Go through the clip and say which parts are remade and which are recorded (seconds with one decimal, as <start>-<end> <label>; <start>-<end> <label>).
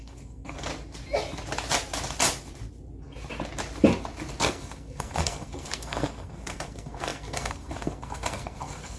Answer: 0.0-0.7 remade; 0.7-4.4 recorded; 4.4-9.0 remade